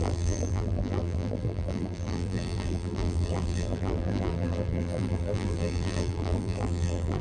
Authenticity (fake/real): fake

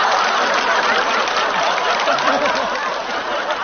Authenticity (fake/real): real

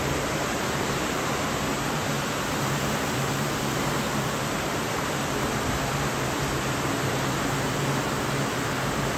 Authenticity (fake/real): fake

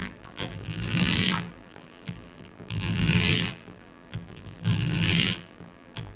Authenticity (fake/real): fake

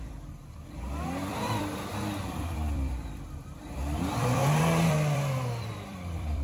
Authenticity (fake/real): fake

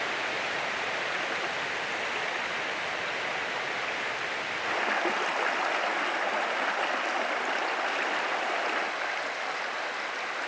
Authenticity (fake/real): real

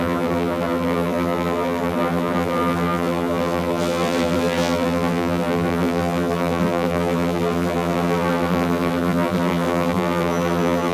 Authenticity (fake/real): fake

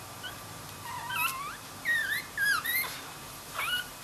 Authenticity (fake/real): fake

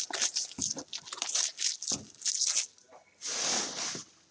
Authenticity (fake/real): real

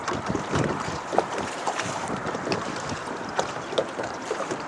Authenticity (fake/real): fake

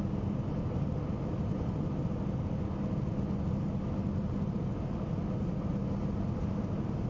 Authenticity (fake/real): real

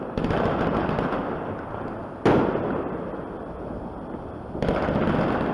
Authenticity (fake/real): real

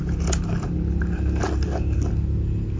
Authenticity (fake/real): real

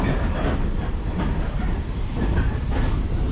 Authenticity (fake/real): fake